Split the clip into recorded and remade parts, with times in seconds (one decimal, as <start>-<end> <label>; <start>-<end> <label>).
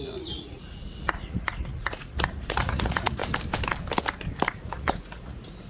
0.0-3.2 remade; 3.2-4.5 recorded; 4.5-5.7 remade